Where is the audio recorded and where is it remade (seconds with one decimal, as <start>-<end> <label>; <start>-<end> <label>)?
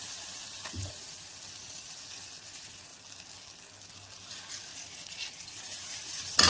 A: 0.0-2.9 remade; 2.9-4.3 recorded; 4.3-6.5 remade